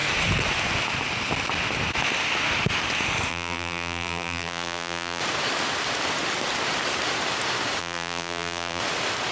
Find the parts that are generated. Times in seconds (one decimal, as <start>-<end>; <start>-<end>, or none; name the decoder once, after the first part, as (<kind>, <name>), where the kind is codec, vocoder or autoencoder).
3.3-5.2 (vocoder, BigVGAN v2); 7.8-8.8